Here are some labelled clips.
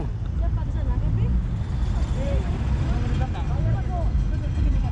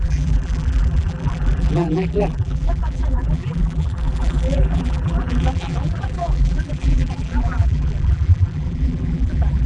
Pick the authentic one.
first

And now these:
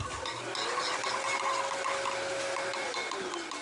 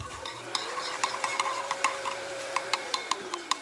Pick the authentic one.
first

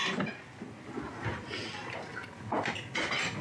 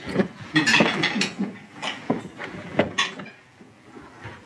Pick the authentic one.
first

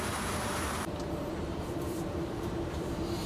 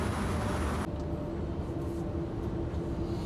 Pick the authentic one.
second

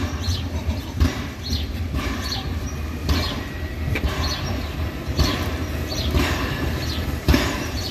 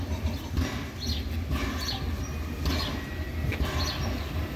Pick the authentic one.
second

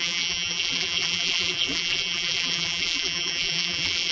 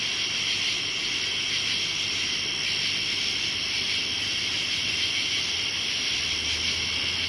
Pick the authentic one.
second